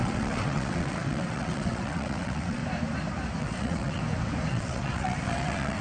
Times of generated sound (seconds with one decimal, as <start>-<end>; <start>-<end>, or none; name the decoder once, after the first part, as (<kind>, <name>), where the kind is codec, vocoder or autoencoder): 0.0-2.6 (vocoder, WaveNeXt); 3.4-4.0; 4.5-5.8